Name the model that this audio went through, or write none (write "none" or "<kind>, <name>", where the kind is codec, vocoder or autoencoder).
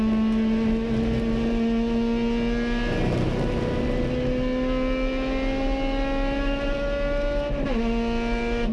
none